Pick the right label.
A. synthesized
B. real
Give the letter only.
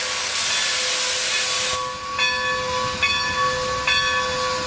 B